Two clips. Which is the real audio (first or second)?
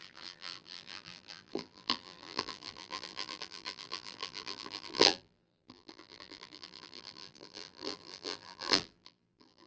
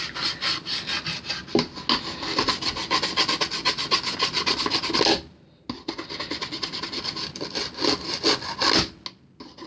second